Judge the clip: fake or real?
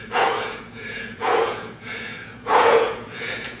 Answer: fake